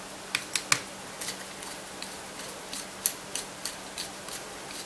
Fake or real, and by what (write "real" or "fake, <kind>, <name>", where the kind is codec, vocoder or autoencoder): real